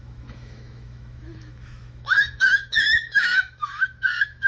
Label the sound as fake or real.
fake